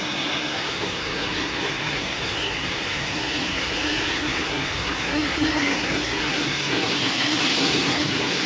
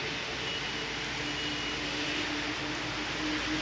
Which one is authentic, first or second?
second